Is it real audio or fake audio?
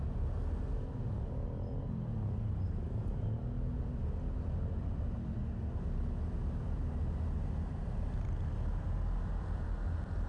real